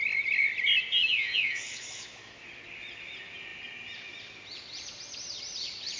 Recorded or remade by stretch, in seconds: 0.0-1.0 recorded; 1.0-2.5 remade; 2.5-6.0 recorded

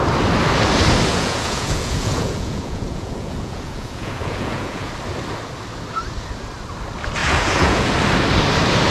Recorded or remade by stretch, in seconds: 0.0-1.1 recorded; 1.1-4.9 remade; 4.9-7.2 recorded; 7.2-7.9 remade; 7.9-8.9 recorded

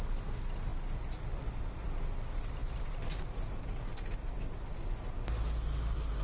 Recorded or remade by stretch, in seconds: 0.0-6.2 recorded

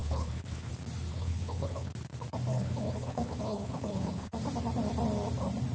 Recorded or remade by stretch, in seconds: 0.0-0.7 remade; 0.7-1.1 recorded; 1.1-1.9 remade; 1.9-2.5 recorded; 2.5-4.3 remade; 4.3-5.7 recorded